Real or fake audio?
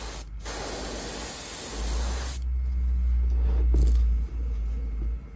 real